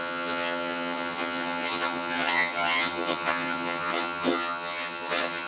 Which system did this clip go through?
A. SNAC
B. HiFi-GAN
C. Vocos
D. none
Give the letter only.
B